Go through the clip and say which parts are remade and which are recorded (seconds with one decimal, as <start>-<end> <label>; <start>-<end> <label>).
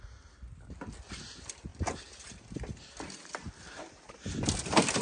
0.0-5.0 recorded